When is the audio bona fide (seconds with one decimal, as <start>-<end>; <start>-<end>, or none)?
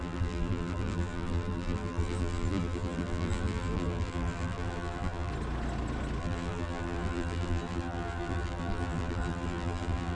5.3-6.2